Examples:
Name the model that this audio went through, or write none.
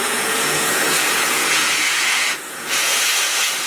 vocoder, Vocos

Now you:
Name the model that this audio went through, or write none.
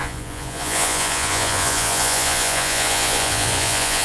vocoder, Vocos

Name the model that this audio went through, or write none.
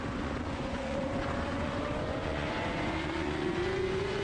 vocoder, Vocos